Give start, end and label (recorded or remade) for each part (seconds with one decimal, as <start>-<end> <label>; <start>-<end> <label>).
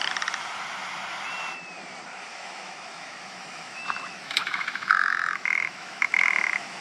0.0-2.3 recorded; 2.3-6.8 remade